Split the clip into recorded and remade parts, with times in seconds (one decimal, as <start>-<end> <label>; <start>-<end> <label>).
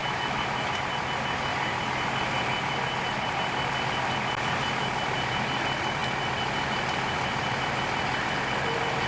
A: 0.0-0.7 remade; 0.7-9.1 recorded